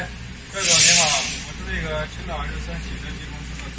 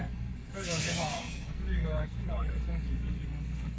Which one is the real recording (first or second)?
first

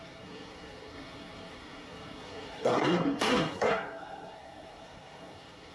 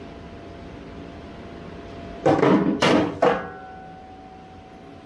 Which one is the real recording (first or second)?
second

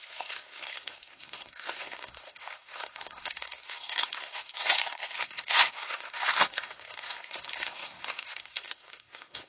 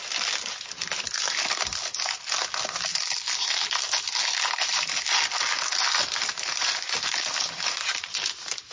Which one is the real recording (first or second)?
second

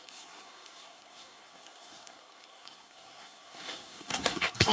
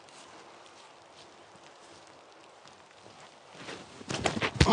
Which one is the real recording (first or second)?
second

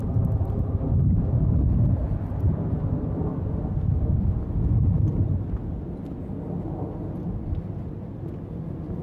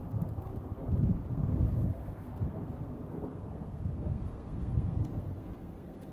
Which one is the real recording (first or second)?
first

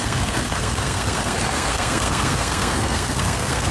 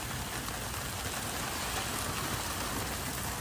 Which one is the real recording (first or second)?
second